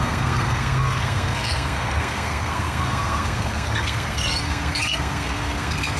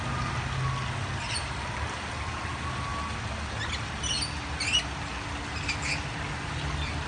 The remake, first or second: first